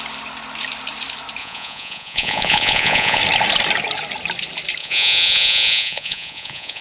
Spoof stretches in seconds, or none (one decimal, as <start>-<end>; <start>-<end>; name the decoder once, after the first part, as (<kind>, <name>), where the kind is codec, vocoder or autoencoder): 1.4-3.2 (vocoder, Vocos); 4.8-6.8